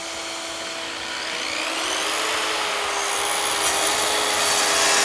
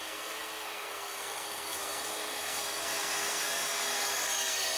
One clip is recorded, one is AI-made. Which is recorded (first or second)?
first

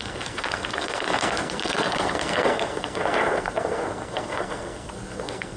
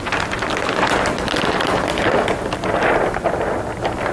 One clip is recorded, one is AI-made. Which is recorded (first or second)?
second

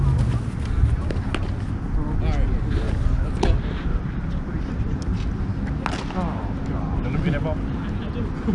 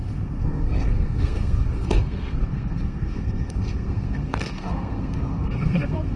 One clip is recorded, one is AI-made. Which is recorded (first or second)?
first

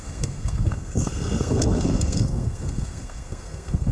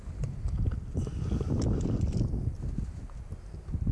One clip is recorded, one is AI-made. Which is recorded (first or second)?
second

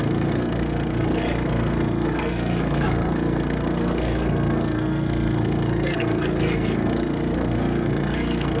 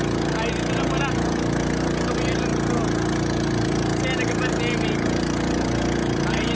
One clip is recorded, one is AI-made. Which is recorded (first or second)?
second